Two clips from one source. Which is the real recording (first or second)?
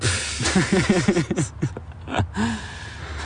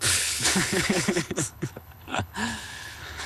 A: first